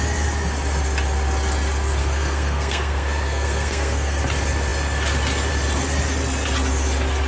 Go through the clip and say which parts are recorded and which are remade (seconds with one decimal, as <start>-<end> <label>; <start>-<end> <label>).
0.0-2.0 recorded; 2.0-4.2 remade; 4.2-7.3 recorded